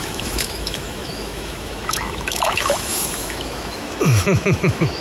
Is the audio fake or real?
fake